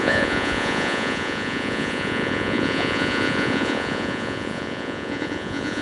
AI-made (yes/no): yes